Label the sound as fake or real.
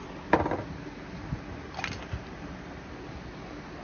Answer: real